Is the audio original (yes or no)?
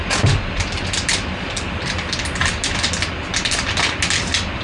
yes